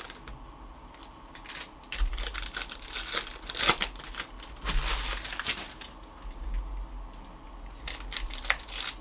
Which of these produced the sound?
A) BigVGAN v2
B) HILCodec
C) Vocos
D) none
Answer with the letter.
D